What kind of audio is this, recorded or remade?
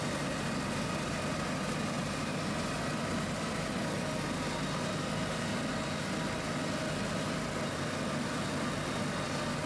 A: recorded